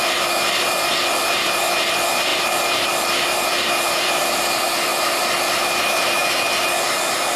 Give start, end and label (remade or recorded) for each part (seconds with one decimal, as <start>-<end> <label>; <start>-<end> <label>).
0.0-4.9 remade; 4.9-5.5 recorded; 5.5-6.2 remade; 6.2-7.4 recorded